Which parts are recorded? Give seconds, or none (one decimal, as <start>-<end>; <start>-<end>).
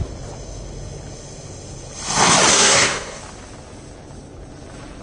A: 0.0-2.5; 3.2-5.0